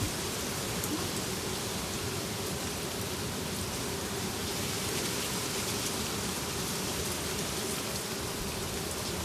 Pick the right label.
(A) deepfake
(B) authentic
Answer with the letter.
A